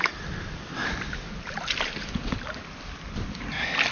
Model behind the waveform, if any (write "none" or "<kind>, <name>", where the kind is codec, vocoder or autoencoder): none